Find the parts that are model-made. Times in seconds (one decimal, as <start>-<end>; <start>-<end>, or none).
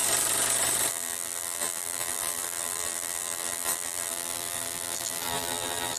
0.9-6.0